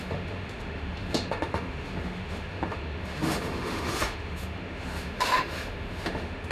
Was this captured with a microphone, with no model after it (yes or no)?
no